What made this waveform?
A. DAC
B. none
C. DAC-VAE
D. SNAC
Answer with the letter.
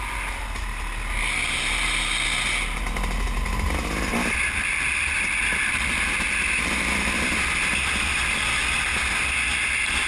B